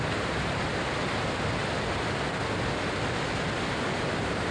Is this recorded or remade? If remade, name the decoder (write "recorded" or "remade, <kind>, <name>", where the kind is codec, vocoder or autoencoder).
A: recorded